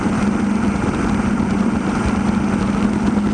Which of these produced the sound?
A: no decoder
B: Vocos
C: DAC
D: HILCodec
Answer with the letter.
A